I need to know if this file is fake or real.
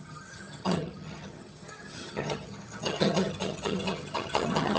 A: fake